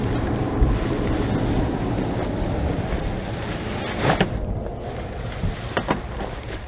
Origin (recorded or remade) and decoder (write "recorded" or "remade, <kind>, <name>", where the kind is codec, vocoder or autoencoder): recorded